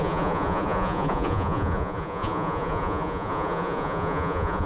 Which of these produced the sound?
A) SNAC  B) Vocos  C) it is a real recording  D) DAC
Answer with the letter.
B